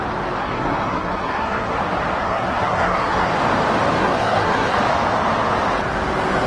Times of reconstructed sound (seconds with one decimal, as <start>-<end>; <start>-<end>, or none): 0.4-1.8; 2.2-3.3; 4.0-4.8